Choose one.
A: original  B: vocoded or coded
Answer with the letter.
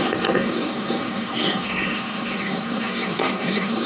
B